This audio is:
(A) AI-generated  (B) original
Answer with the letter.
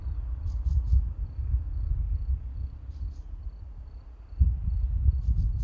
B